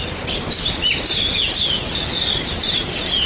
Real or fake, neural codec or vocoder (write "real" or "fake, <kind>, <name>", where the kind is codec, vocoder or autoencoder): real